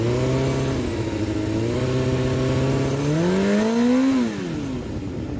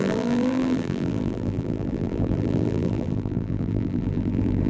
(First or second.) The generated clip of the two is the second